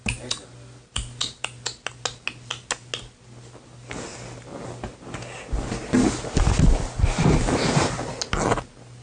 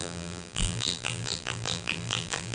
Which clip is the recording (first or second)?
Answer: first